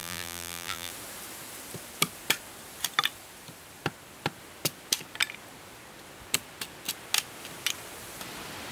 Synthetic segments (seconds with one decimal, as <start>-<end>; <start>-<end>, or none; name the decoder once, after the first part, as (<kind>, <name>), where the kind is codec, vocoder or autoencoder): 0.0-0.9 (vocoder, BigVGAN v2)